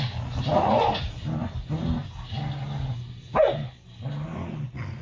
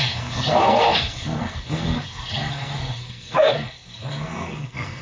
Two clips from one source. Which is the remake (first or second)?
second